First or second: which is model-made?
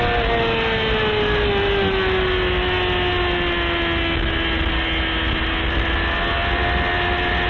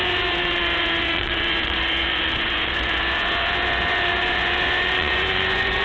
second